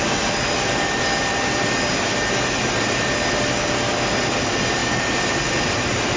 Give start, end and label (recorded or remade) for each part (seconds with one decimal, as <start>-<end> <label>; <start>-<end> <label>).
0.0-6.2 recorded